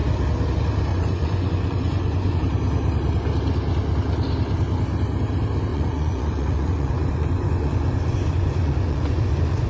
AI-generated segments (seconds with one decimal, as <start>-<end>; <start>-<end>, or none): 0.9-2.4; 5.7-9.7

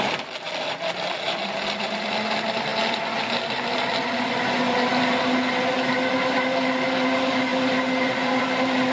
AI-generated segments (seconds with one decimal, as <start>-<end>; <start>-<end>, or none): none

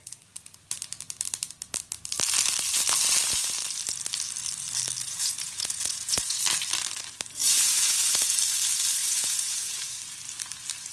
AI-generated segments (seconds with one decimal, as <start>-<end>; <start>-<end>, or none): 5.0-6.4; 7.4-8.1; 9.0-10.0

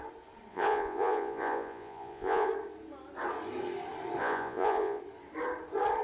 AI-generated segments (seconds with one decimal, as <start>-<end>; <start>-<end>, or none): 0.5-2.5; 4.2-5.0

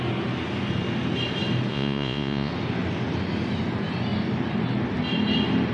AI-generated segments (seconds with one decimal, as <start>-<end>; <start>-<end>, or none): 1.7-2.5